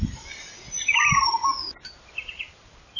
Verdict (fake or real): real